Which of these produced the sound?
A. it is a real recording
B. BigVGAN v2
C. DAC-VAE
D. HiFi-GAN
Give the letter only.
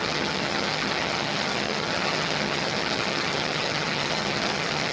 D